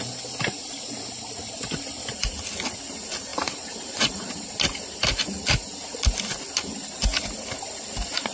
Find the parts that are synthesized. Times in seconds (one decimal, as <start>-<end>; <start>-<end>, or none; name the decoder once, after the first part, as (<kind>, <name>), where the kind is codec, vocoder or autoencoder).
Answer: 3.3-4.5 (vocoder, BigVGAN v2)